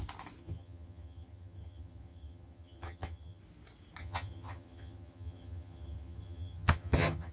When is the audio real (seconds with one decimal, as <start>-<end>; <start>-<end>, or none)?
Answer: 0.0-0.4; 3.4-4.0